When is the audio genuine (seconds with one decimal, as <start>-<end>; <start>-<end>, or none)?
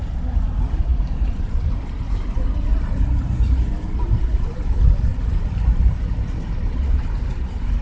0.0-7.8